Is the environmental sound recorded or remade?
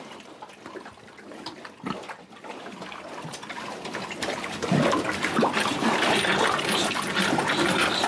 remade